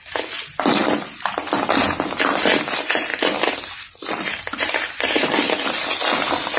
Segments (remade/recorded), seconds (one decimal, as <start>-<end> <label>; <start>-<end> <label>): 0.0-0.8 recorded; 0.8-1.6 remade; 1.6-3.1 recorded; 3.1-5.9 remade; 5.9-6.6 recorded